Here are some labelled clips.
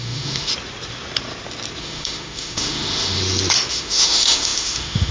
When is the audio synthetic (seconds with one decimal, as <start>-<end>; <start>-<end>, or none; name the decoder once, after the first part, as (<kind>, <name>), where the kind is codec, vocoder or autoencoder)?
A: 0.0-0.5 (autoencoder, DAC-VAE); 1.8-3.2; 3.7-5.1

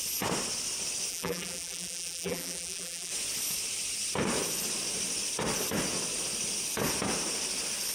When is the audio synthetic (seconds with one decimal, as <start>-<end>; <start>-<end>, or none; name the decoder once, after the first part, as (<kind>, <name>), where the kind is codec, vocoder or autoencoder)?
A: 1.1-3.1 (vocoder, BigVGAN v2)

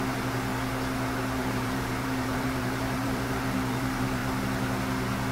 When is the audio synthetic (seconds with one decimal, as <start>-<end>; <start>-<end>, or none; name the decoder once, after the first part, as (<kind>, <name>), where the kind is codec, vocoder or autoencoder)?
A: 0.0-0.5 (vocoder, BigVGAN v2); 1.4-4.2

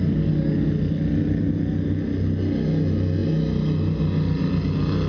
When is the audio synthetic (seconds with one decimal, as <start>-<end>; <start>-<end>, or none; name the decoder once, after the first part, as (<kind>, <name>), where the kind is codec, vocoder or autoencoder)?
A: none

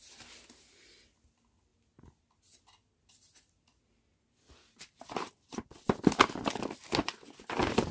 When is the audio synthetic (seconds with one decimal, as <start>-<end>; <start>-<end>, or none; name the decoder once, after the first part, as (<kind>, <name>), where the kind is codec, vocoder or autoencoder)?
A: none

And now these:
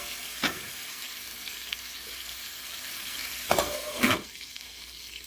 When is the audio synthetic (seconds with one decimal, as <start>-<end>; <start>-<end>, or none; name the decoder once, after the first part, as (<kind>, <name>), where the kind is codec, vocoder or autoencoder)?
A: 0.0-5.3 (codec, SNAC)

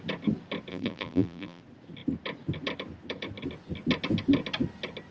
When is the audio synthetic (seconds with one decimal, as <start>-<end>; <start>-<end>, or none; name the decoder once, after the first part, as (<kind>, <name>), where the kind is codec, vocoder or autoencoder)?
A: 0.7-1.6 (vocoder, BigVGAN v2)

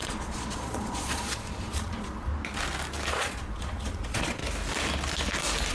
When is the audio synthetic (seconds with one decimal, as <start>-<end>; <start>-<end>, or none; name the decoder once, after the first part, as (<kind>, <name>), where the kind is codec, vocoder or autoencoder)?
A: 0.0-2.3 (vocoder, Vocos); 3.1-4.4